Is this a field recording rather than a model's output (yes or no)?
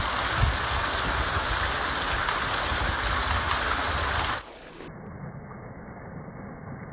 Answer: yes